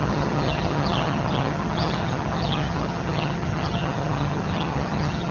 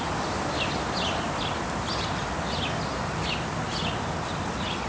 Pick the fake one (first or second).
first